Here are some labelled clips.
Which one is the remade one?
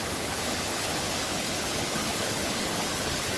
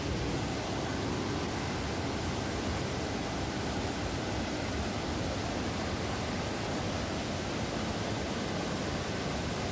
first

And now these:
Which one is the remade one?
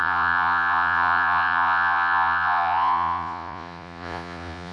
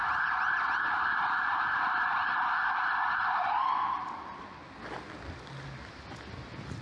first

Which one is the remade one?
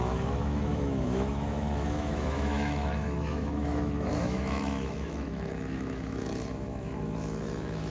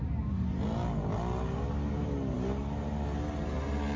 first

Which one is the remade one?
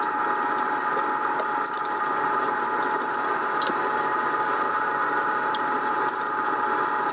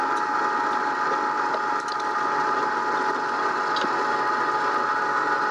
first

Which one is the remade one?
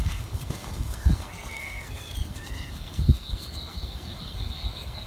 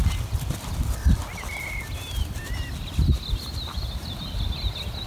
first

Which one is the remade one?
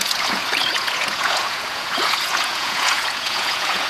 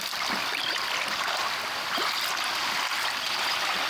first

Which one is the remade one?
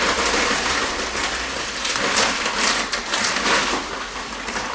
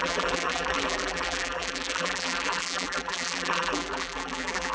second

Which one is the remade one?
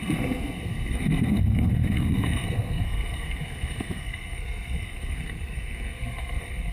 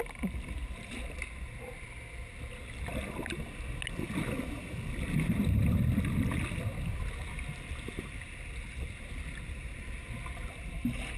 first